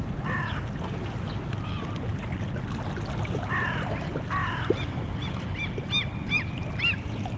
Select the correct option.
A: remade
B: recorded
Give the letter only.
B